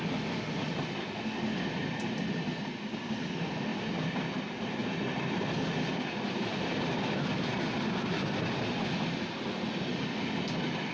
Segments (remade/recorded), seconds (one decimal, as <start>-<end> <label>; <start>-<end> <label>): 0.0-10.9 recorded